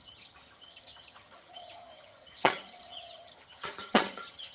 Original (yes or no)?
no